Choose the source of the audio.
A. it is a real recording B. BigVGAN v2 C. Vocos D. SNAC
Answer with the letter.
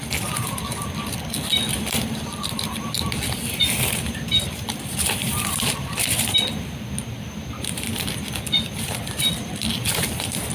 B